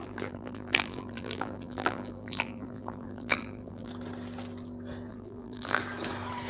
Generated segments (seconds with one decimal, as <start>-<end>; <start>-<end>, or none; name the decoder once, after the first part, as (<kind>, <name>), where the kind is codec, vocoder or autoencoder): 0.0-3.9 (vocoder, BigVGAN v2); 5.1-5.8